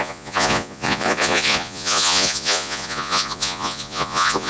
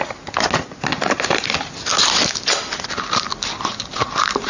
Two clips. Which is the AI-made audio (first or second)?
first